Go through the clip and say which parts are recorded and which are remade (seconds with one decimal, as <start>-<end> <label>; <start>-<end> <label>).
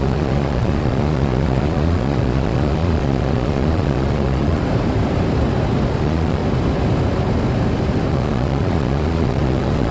0.0-4.6 remade; 4.6-6.0 recorded; 6.0-6.4 remade; 6.4-8.1 recorded; 8.1-9.9 remade